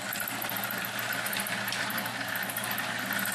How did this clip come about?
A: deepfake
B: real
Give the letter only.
B